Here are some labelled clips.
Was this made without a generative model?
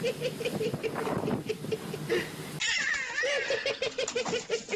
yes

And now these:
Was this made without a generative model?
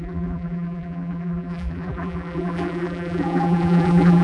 no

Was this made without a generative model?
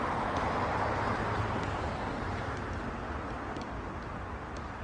yes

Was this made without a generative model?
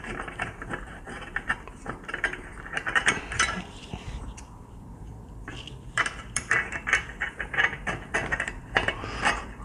no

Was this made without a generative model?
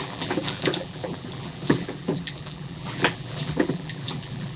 no